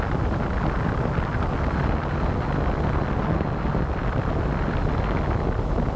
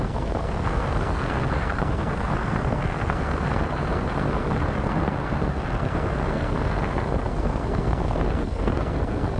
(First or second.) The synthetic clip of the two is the second